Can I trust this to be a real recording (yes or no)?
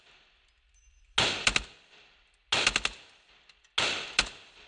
yes